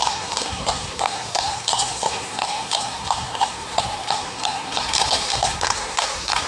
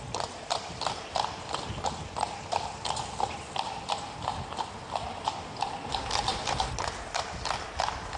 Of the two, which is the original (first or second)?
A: second